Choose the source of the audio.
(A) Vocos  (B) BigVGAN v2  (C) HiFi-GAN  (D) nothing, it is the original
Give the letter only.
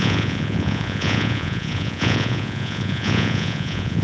A